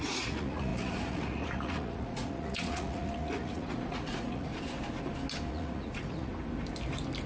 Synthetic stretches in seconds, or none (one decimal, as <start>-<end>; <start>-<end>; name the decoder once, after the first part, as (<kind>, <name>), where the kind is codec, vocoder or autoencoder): 0.0-4.5 (vocoder, Vocos); 5.5-6.3